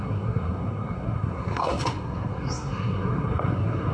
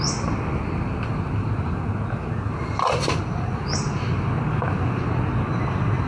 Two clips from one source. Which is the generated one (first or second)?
first